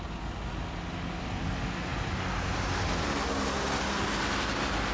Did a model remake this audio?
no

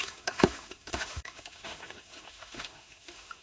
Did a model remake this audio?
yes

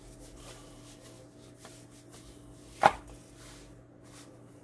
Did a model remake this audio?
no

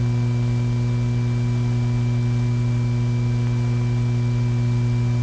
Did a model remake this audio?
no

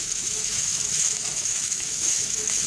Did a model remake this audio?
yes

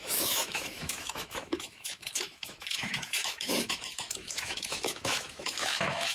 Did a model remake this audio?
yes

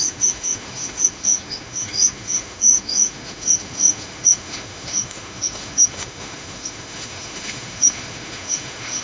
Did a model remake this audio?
yes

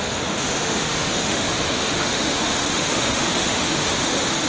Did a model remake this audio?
yes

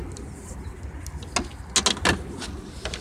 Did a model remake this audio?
no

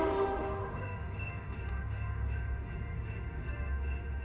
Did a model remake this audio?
yes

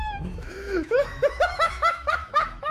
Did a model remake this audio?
yes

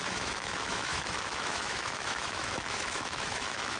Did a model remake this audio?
yes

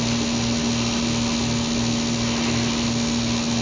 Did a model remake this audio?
no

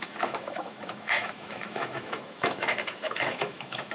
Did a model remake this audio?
yes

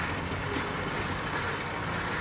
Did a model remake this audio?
no